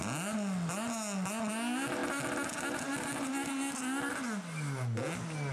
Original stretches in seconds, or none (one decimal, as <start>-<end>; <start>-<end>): 0.0-5.5